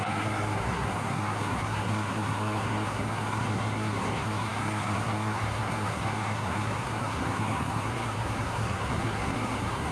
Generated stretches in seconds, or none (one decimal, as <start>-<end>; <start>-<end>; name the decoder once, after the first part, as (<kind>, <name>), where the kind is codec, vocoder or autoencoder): 0.0-9.9 (codec, SNAC)